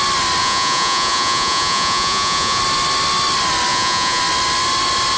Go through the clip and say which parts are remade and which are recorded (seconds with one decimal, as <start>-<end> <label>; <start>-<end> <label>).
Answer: 0.0-0.4 recorded; 0.4-2.6 remade; 2.6-3.7 recorded; 3.7-4.2 remade; 4.2-5.2 recorded

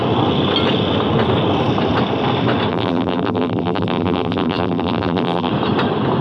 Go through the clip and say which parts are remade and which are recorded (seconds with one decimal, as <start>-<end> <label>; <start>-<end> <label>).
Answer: 0.0-2.7 recorded; 2.7-5.5 remade; 5.5-6.2 recorded